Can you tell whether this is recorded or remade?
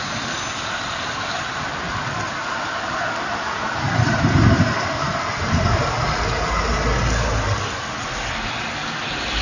recorded